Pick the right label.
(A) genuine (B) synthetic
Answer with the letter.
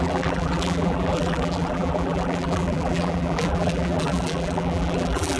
B